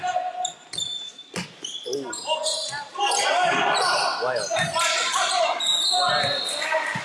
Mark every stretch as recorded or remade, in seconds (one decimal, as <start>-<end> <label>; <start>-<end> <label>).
0.0-7.0 recorded